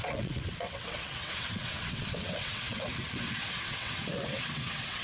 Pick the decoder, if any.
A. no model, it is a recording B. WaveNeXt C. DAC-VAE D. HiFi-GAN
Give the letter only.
B